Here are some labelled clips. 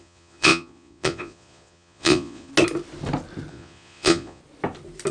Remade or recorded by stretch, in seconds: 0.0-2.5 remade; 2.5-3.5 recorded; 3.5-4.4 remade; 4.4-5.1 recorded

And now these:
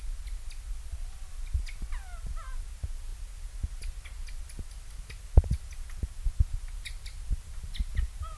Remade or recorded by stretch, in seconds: 0.0-8.4 recorded